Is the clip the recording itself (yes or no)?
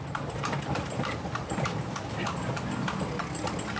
yes